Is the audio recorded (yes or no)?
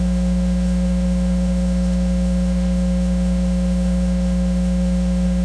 no